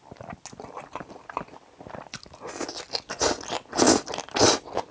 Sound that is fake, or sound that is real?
real